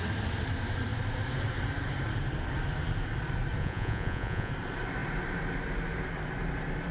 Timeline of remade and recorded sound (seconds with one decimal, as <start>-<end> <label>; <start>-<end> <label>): 0.0-3.6 recorded; 3.6-4.5 remade; 4.5-6.9 recorded